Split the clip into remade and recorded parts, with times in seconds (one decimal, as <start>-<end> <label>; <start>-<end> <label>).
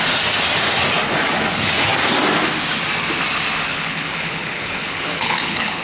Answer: 0.0-3.7 recorded; 3.7-5.8 remade